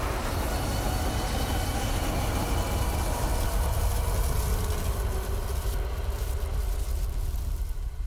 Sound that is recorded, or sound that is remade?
recorded